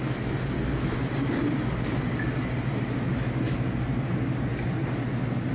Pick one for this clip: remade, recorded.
recorded